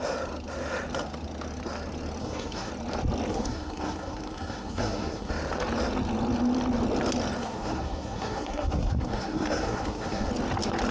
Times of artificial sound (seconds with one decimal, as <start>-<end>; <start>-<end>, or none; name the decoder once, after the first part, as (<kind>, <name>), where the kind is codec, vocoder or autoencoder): 2.2-2.7 (codec, SNAC); 3.3-5.3; 7.4-10.3